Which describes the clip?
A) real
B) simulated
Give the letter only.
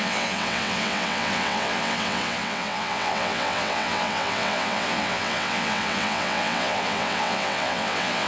B